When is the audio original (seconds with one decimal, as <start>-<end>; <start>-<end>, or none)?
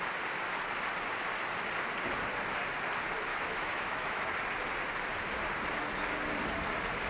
0.0-3.3; 4.3-7.1